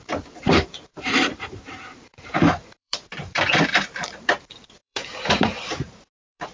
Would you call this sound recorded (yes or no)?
no